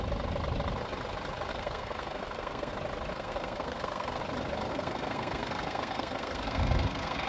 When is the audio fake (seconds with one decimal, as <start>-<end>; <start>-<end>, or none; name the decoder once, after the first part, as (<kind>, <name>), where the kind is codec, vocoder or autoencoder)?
1.5-2.7 (codec, SNAC); 3.1-4.2; 4.7-7.3